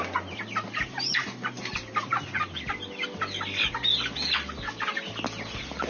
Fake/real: real